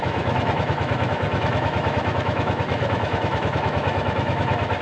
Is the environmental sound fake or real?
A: fake